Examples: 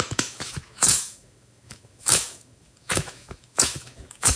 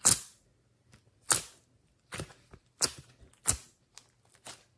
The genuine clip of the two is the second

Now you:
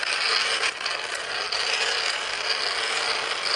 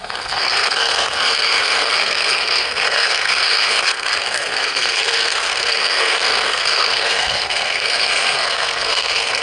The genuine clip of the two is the first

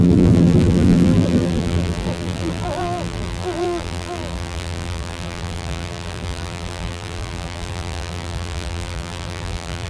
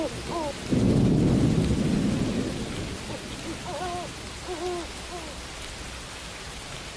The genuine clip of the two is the second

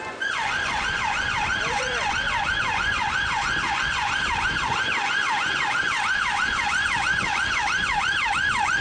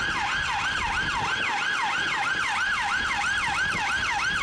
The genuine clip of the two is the second